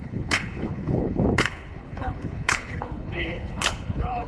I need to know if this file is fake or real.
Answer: fake